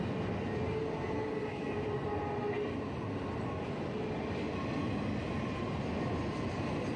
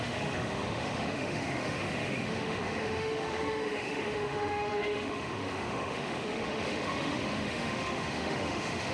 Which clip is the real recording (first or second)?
first